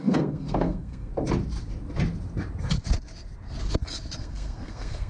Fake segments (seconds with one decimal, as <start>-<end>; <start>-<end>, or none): 0.0-1.1; 4.2-5.1

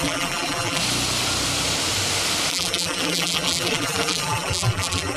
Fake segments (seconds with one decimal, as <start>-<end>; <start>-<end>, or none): 0.0-0.8; 2.5-5.2

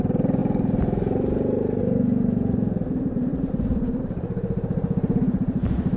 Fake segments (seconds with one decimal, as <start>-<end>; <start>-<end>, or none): 0.0-0.4; 1.8-6.0

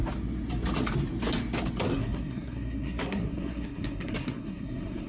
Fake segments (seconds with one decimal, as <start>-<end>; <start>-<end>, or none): 1.9-5.1